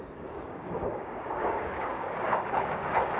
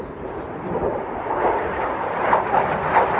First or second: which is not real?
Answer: first